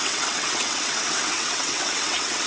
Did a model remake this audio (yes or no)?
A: yes